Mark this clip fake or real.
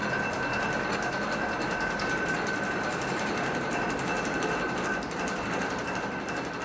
real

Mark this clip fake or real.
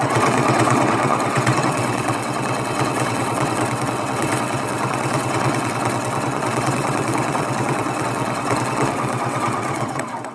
fake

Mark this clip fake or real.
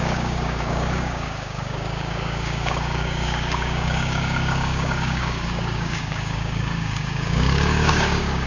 fake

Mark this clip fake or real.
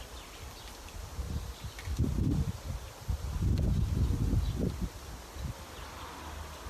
real